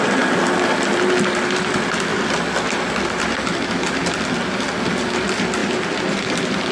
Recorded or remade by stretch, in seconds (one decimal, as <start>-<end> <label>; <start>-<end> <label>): 0.0-6.7 recorded